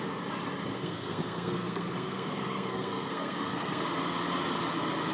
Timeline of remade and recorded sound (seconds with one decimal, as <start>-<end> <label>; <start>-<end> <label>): 0.0-0.7 recorded; 0.7-3.8 remade; 3.8-5.1 recorded